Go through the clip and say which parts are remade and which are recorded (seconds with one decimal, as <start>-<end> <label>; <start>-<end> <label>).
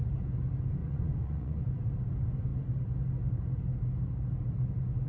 0.0-0.8 recorded; 0.8-1.6 remade; 1.6-5.1 recorded